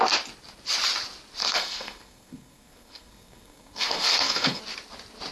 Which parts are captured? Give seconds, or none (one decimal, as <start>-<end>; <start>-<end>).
0.0-1.4; 4.6-5.3